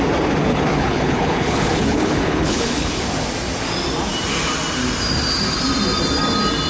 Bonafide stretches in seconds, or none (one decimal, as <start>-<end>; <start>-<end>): 0.0-0.5; 3.0-6.7